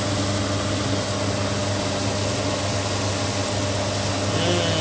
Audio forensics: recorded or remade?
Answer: recorded